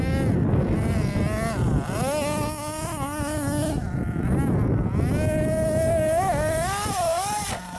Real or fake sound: real